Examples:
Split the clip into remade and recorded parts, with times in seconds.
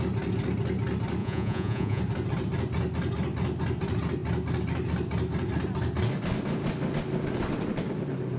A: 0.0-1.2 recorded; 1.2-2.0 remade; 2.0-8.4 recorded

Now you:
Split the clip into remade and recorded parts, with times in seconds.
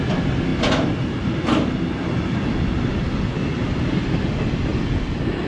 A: 0.0-5.5 recorded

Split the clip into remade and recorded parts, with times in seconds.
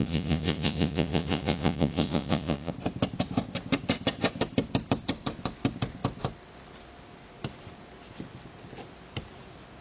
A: 0.0-2.7 remade; 2.7-9.8 recorded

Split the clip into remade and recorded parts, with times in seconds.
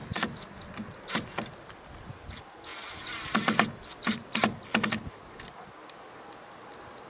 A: 0.0-7.1 recorded